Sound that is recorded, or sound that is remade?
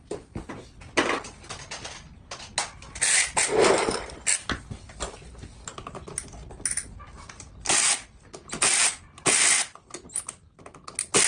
recorded